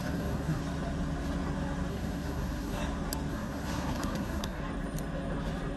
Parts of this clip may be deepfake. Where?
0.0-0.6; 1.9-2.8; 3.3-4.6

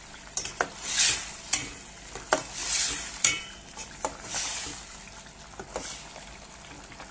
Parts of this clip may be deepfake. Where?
2.6-4.7

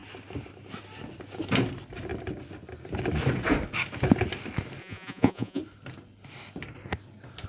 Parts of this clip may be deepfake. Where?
4.8-5.6